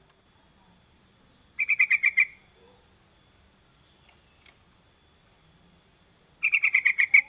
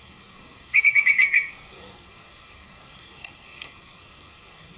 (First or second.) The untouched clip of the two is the first